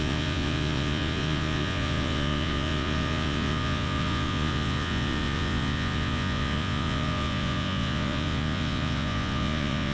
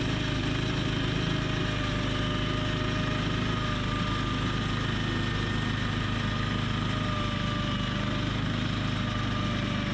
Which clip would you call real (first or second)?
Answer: second